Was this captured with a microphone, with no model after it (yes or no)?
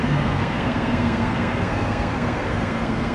no